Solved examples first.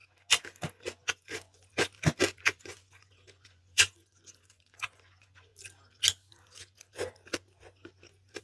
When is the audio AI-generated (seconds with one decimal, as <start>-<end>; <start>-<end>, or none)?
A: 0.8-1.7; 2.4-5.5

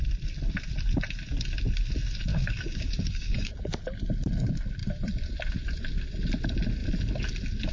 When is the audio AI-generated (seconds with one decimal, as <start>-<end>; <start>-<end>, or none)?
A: 2.3-3.8

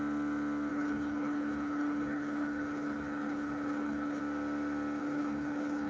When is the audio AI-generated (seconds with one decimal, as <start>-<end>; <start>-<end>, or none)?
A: 0.7-4.2; 5.0-5.9